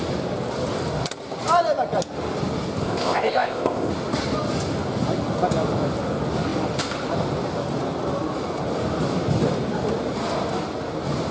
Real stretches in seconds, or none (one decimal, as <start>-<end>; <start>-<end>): 0.0-2.8; 3.9-11.3